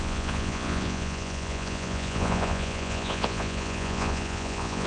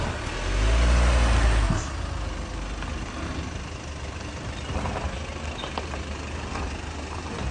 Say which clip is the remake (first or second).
first